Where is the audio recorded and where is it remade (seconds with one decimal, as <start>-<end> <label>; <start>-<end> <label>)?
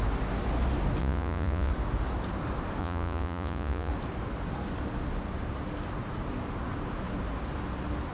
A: 0.0-1.0 recorded; 1.0-1.7 remade; 1.7-2.8 recorded; 2.8-3.9 remade; 3.9-8.1 recorded